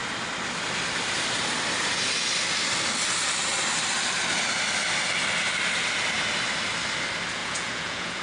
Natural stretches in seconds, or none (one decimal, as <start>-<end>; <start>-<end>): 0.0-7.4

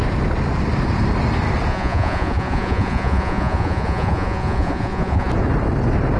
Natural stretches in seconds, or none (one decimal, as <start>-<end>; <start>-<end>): 0.0-1.7; 5.3-6.2

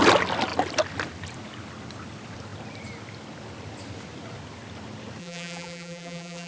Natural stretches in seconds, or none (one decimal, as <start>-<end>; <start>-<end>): 0.0-5.2

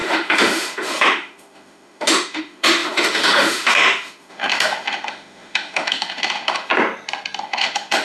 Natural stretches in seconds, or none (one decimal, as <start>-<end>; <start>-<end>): 6.7-7.4

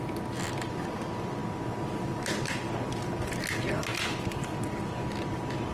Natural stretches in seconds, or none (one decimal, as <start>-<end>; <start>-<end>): 0.0-5.7

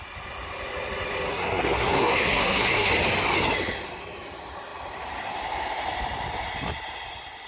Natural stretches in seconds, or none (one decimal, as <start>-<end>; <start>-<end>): 0.0-1.3; 2.9-7.5